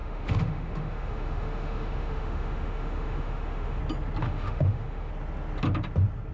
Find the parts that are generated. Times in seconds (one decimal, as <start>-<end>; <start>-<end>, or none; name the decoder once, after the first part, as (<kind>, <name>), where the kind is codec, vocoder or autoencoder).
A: 0.0-3.8 (autoencoder, DAC-VAE); 4.2-5.1